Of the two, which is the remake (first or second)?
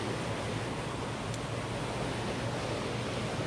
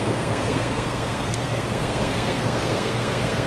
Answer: second